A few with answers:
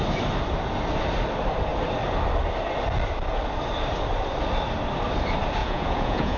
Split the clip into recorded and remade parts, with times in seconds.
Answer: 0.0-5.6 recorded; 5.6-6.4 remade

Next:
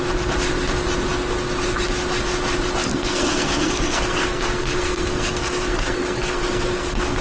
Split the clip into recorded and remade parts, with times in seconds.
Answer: 0.0-2.9 recorded; 2.9-7.2 remade

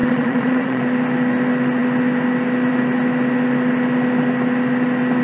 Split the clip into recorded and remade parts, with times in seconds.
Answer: 0.0-0.8 remade; 0.8-5.2 recorded

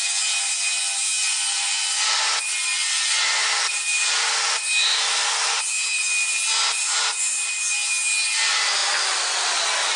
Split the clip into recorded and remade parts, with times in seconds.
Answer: 0.0-2.8 recorded; 2.8-5.5 remade; 5.5-10.0 recorded